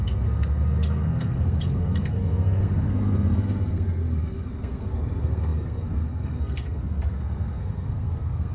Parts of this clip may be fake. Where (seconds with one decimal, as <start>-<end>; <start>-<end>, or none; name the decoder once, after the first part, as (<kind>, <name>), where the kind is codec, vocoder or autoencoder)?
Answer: 0.0-8.5 (codec, SNAC)